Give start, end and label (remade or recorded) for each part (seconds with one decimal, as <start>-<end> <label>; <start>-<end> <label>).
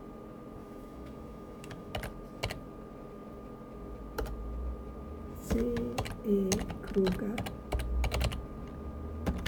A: 0.0-0.6 recorded; 0.6-1.9 remade; 1.9-5.3 recorded; 5.3-6.1 remade; 6.1-9.5 recorded